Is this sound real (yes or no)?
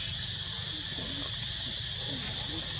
yes